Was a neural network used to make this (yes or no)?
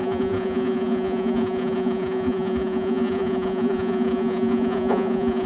yes